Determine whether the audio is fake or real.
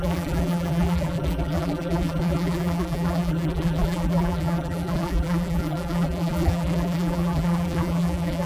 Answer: fake